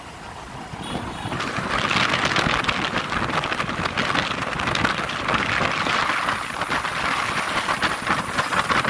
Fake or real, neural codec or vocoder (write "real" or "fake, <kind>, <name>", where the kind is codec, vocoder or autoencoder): real